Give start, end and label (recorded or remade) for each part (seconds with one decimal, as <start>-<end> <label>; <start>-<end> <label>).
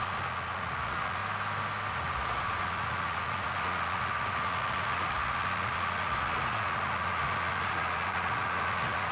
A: 0.0-1.2 remade; 1.2-1.9 recorded; 1.9-9.1 remade